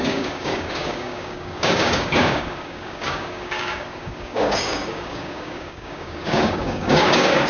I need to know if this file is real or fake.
fake